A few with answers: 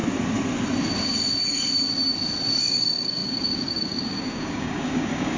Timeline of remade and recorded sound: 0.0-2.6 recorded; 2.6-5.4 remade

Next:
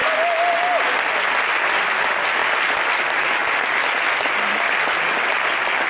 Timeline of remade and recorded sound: 0.0-5.9 recorded

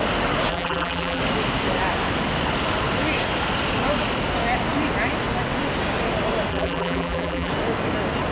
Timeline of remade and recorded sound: 0.0-0.5 recorded; 0.5-1.2 remade; 1.2-6.5 recorded; 6.5-7.5 remade; 7.5-8.3 recorded

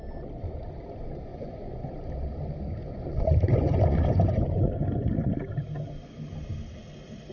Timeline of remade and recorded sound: 0.0-1.3 recorded; 1.3-1.9 remade; 1.9-2.8 recorded; 2.8-5.1 remade; 5.1-7.3 recorded

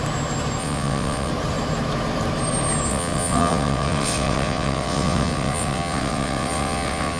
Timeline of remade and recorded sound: 0.0-0.6 recorded; 0.6-1.3 remade; 1.3-2.9 recorded; 2.9-7.2 remade

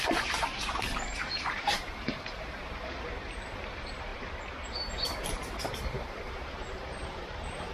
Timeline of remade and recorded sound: 0.0-7.7 remade